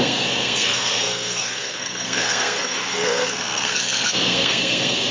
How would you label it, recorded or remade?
remade